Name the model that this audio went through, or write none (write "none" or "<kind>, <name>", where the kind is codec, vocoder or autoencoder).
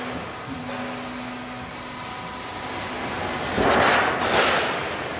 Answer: none